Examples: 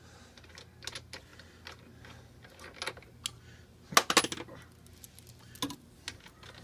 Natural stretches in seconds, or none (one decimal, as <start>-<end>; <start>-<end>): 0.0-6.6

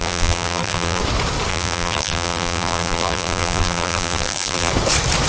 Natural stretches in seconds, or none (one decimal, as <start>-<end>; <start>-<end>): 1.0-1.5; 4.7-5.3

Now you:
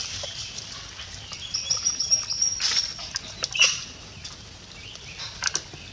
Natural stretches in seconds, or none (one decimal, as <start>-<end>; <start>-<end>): 0.0-5.9

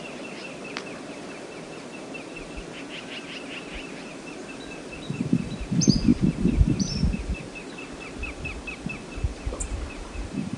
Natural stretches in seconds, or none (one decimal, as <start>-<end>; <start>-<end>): 0.0-4.1; 5.6-6.1; 7.4-9.3